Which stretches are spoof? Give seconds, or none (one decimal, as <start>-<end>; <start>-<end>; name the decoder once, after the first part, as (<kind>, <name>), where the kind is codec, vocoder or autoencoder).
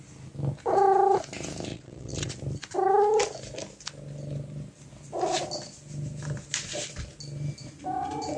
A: 1.7-2.3 (vocoder, Vocos)